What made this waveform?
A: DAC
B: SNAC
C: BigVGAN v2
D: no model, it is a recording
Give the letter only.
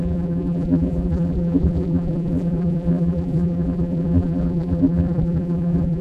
C